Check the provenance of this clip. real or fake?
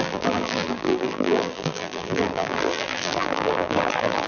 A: fake